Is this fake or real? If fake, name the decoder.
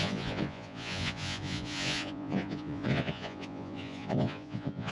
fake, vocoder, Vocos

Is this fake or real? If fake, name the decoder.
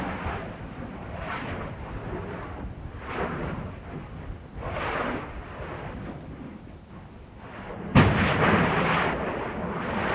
real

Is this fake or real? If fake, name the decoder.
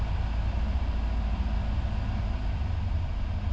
real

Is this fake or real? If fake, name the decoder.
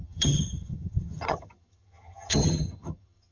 fake, vocoder, HiFi-GAN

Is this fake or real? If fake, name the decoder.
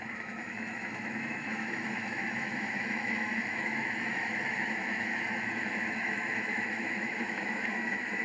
fake, autoencoder, DAC-VAE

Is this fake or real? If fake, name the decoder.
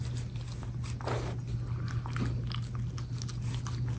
real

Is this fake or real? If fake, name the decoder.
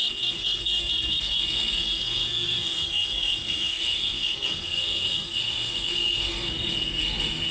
fake, codec, SNAC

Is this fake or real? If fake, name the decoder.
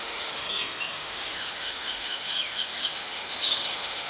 fake, autoencoder, DAC-VAE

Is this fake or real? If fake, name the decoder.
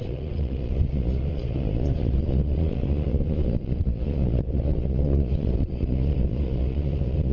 fake, vocoder, Vocos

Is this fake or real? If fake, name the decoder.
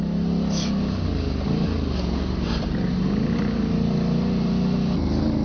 real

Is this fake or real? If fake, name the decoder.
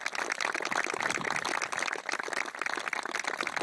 real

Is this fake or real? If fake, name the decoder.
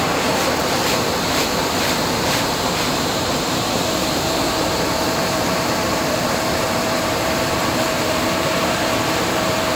fake, vocoder, BigVGAN v2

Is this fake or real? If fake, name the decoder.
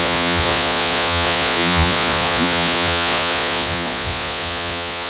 fake, vocoder, Vocos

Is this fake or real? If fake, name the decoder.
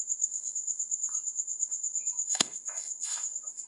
fake, autoencoder, DAC-VAE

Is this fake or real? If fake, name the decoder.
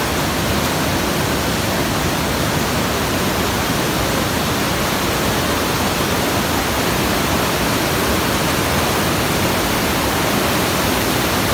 real